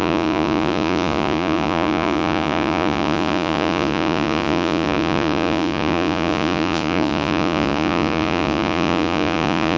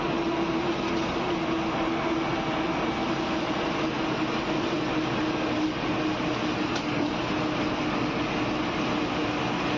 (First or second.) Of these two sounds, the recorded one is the second